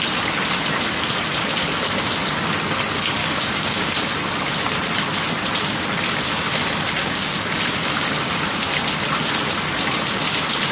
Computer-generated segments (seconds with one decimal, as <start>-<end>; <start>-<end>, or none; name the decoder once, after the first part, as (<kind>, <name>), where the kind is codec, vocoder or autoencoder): 3.2-3.9 (codec, DAC); 7.0-7.5